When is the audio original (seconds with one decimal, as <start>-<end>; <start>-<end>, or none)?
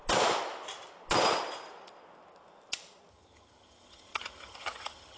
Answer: 0.0-3.1